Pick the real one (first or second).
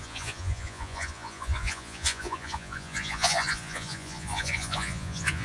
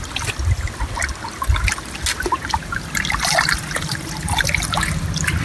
second